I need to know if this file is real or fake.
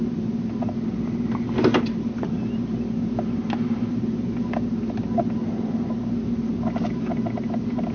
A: real